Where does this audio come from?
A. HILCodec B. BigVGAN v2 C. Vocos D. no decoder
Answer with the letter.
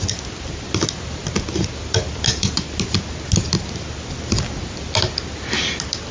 D